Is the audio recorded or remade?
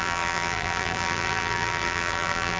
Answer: remade